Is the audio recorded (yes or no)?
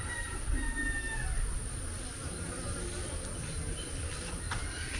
yes